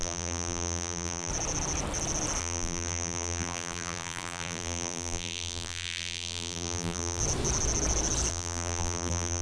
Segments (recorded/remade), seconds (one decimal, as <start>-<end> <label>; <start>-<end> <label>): 0.0-1.3 remade; 1.3-2.4 recorded; 2.4-7.2 remade; 7.2-8.3 recorded; 8.3-9.4 remade